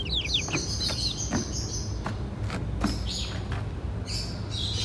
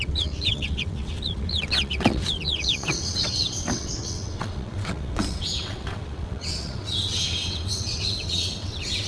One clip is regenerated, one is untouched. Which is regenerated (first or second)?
second